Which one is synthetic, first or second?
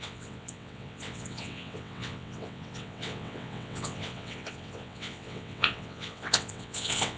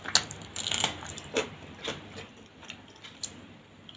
first